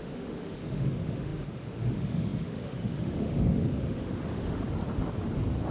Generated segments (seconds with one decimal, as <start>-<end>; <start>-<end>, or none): 0.0-4.6

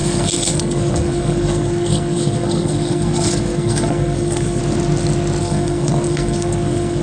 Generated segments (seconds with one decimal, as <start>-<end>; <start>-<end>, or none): 0.0-4.6; 5.4-7.0